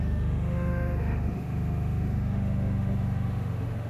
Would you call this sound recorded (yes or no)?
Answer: no